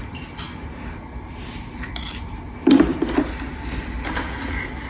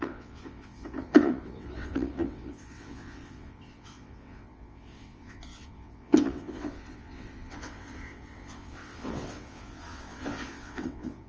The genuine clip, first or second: first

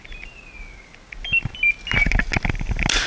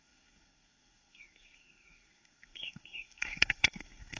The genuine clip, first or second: first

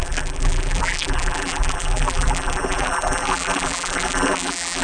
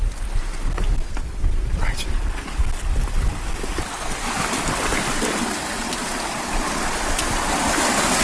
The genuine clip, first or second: second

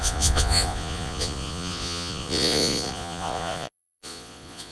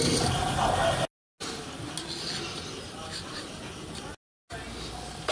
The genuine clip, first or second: second